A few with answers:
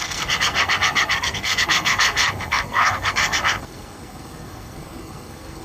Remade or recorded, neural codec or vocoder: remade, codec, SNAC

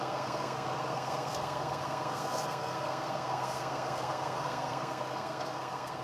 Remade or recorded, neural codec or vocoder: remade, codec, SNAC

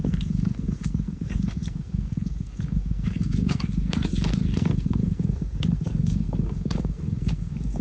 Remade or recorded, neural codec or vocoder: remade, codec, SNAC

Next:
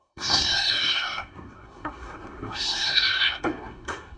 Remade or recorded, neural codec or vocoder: remade, codec, SNAC